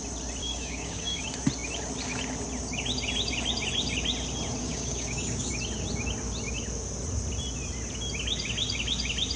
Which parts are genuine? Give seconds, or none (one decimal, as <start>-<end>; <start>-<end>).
0.0-0.4; 1.2-4.6; 5.5-9.4